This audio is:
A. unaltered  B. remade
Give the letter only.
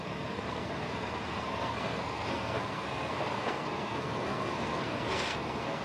B